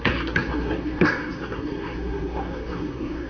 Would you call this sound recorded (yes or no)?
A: no